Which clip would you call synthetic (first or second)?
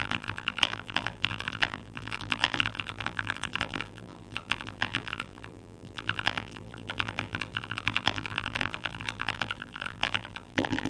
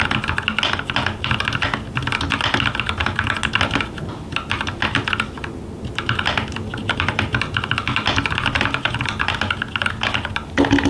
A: first